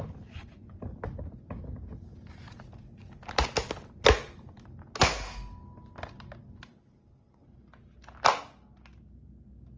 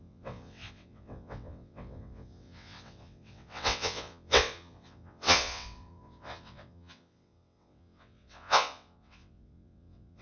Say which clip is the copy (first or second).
second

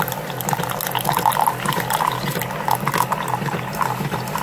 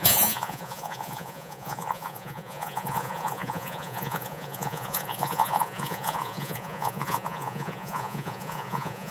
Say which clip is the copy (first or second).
second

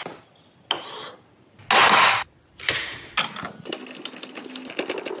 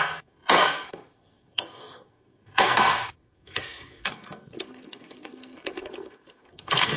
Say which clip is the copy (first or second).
second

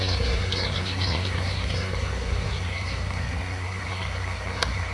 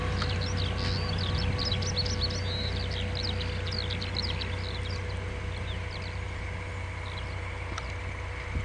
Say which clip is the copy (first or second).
first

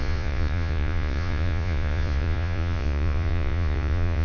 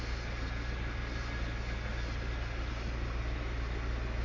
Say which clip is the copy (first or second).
first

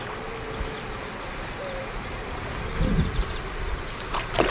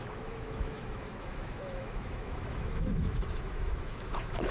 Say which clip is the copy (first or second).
second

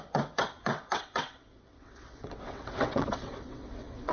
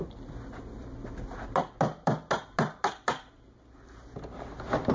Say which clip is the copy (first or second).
first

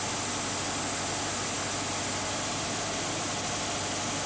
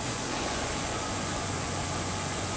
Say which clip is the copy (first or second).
second